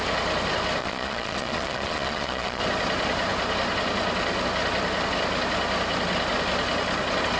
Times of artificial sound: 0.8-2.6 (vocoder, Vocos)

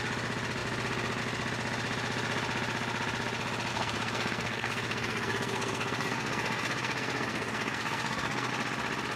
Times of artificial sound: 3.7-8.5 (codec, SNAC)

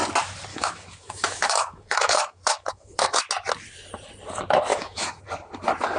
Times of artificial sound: 0.5-3.2 (autoencoder, DAC-VAE); 4.7-5.2

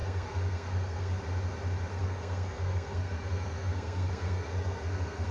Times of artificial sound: 0.0-1.2 (codec, SNAC); 1.9-5.3